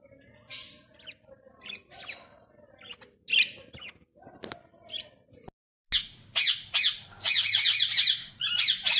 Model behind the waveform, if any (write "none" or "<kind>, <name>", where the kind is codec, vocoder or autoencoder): none